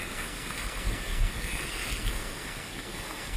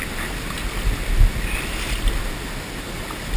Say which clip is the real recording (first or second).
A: second